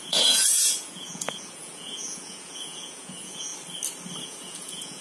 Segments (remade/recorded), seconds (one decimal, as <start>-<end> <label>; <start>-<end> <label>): 0.0-3.5 remade; 3.5-4.2 recorded; 4.2-5.0 remade